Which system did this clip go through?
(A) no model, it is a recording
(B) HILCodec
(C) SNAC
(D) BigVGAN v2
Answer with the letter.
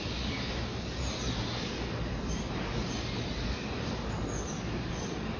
A